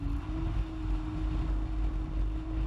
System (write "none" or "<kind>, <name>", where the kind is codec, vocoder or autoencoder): none